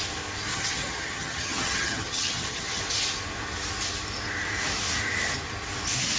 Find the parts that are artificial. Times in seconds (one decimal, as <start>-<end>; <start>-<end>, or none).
0.5-2.8